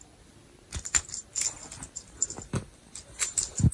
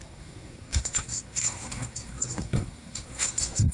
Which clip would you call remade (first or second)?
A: second